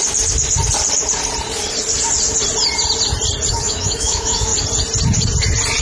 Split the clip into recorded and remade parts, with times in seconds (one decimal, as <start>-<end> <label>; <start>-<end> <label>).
0.0-3.5 recorded; 3.5-4.5 remade; 4.5-5.8 recorded